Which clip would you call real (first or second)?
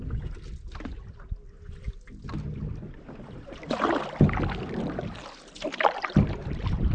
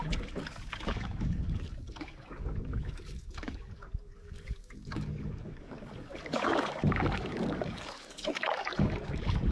first